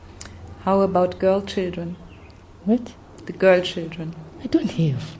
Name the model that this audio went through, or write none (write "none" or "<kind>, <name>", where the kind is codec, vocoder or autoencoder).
none